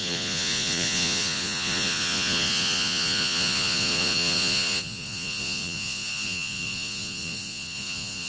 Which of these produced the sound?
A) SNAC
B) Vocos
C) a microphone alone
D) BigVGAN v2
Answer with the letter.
B